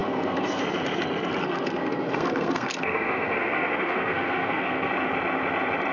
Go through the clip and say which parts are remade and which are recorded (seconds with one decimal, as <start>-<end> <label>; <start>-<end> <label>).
0.0-0.6 remade; 0.6-1.4 recorded; 1.4-4.9 remade; 4.9-5.9 recorded